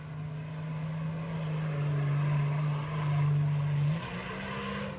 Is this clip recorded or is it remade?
recorded